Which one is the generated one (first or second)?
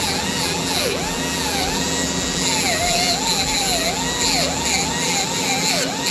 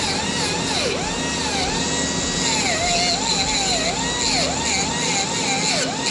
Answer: first